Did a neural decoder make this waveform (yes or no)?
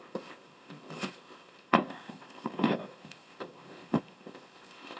yes